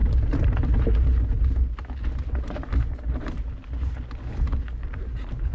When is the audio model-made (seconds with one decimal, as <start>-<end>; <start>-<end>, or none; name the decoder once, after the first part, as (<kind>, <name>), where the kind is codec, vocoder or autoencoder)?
0.0-5.5 (vocoder, BigVGAN v2)